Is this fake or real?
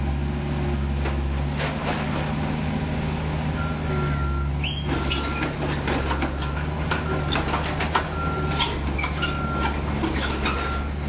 real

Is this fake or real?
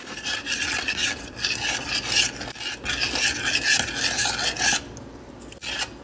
real